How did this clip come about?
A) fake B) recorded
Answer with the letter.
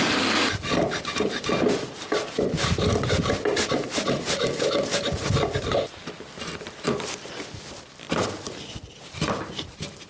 B